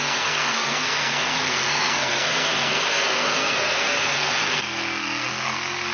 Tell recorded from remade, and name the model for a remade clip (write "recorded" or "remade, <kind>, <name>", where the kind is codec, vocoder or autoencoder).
remade, codec, SNAC